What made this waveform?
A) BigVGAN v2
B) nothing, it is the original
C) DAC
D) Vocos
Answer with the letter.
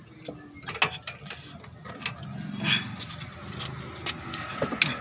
B